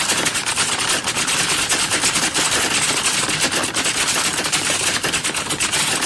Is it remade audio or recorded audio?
recorded